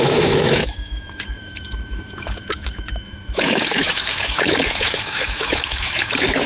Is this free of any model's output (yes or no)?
no